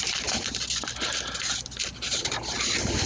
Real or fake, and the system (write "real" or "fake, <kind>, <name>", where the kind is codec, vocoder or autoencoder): real